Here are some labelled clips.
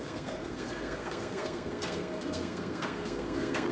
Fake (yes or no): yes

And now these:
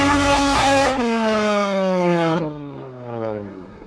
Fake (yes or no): yes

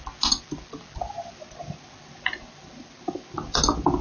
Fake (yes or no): no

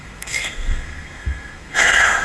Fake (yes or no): yes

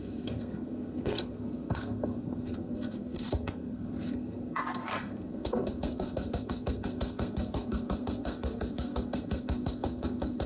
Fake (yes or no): yes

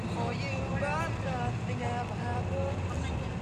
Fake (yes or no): no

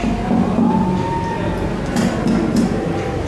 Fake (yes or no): no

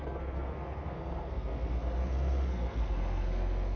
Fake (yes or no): yes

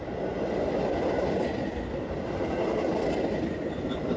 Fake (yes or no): no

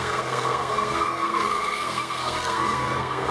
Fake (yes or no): yes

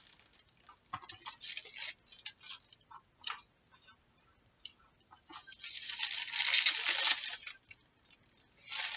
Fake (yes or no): no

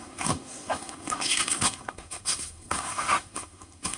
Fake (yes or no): yes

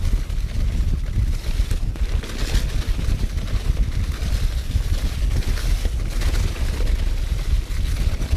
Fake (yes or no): no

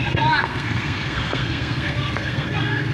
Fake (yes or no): yes